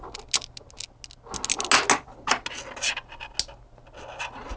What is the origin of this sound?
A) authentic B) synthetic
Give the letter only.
A